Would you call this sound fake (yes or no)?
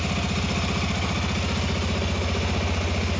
no